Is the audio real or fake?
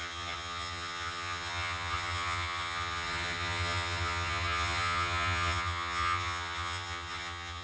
fake